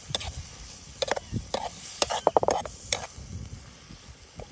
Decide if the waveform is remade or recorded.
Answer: recorded